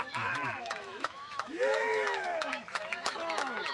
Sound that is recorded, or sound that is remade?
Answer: remade